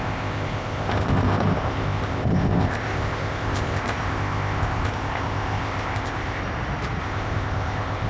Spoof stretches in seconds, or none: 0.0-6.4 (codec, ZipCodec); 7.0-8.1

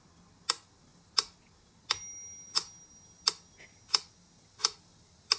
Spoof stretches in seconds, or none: none